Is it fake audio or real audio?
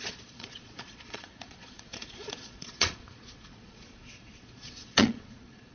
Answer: fake